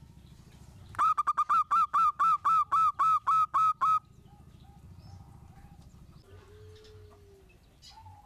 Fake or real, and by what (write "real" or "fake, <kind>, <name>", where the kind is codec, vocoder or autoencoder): real